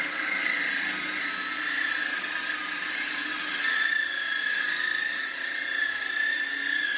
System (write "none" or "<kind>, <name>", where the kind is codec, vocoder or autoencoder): none